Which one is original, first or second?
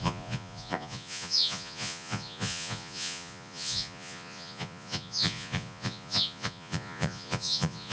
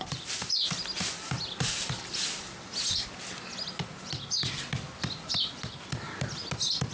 second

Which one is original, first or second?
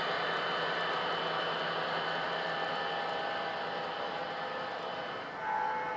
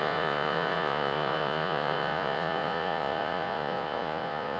first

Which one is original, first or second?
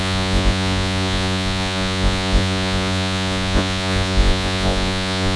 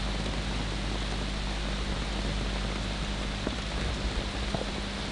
second